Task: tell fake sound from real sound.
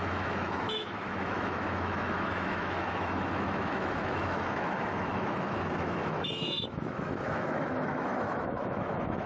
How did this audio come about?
fake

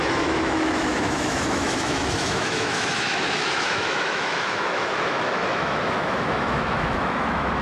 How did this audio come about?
fake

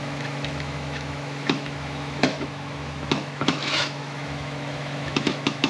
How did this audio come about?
fake